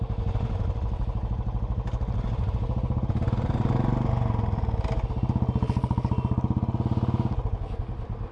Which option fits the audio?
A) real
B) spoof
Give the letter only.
A